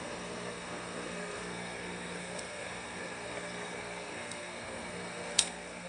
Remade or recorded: remade